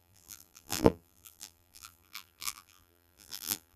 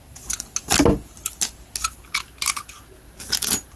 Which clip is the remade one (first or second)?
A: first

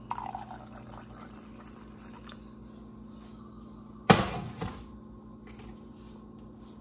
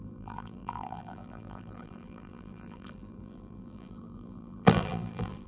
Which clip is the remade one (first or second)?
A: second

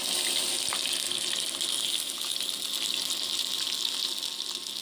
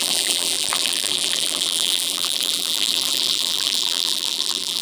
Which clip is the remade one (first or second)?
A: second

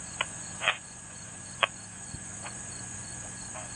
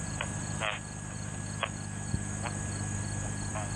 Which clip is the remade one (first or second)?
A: first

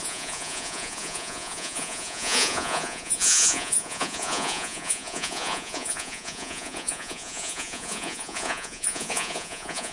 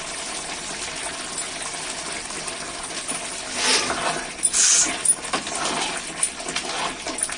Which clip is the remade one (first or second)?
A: first